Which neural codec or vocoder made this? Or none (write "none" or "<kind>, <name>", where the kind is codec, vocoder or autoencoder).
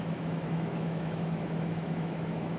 autoencoder, DAC-VAE